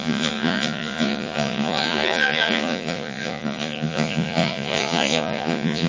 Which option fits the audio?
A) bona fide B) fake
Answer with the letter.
B